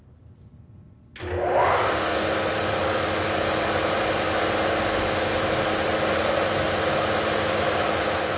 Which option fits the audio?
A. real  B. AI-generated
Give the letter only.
A